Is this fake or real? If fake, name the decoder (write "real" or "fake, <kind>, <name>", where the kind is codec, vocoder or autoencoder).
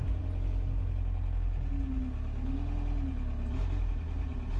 real